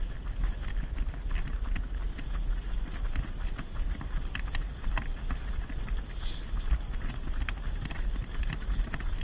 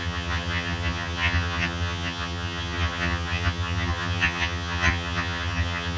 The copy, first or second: second